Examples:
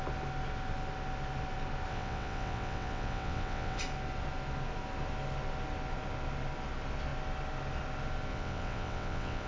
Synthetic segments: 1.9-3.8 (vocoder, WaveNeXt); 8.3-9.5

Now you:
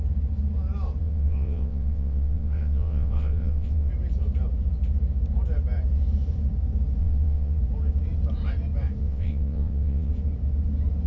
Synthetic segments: 1.0-3.9 (vocoder, WaveNeXt); 7.0-7.6; 9.0-10.1

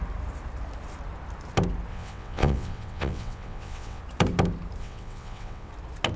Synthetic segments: 1.9-4.0 (vocoder, WaveNeXt); 4.8-5.7

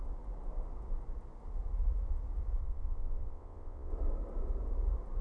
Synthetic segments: 2.6-3.9 (vocoder, WaveNeXt)